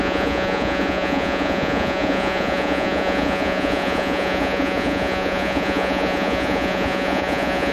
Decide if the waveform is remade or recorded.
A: remade